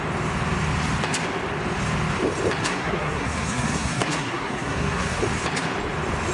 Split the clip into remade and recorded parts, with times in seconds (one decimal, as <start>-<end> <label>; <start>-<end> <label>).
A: 0.0-2.6 recorded; 2.6-5.2 remade; 5.2-6.3 recorded